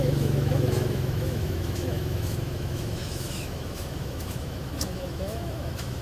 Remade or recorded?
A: remade